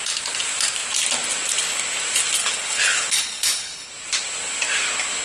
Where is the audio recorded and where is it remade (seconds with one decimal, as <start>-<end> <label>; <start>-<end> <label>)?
0.0-2.4 recorded; 2.4-3.9 remade; 3.9-5.2 recorded